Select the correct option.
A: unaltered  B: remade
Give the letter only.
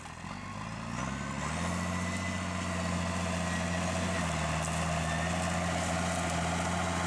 A